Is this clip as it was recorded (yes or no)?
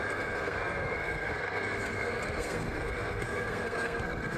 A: no